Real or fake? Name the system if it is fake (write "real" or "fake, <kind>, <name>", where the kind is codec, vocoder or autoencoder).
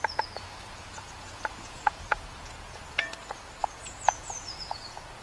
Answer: fake, vocoder, Vocos